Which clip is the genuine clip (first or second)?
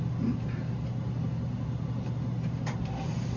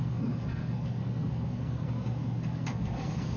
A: first